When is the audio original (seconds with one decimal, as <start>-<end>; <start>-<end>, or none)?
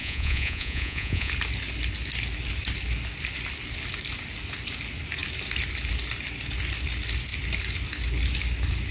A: 1.3-8.9